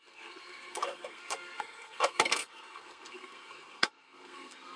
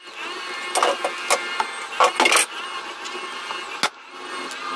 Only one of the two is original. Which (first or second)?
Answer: second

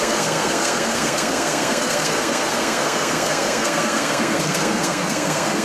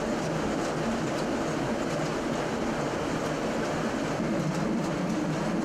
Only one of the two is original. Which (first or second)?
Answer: second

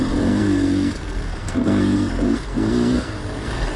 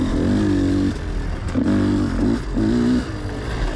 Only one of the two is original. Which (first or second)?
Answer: second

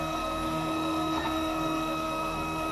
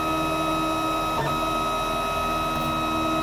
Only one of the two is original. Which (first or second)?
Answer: second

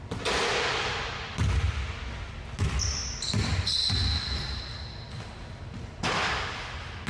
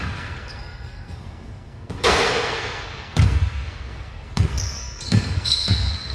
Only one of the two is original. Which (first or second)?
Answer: first